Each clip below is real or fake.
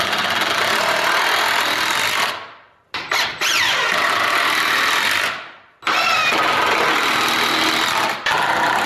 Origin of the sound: real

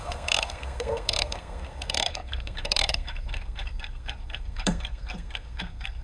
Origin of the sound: fake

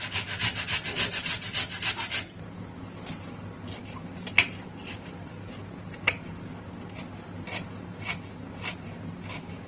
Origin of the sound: real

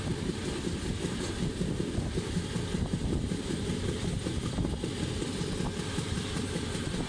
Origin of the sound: real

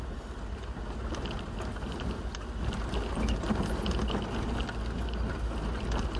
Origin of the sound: real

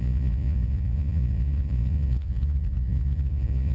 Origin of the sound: fake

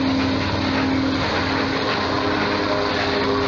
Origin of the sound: real